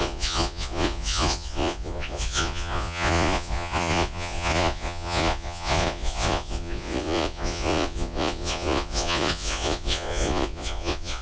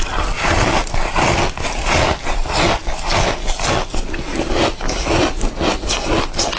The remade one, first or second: first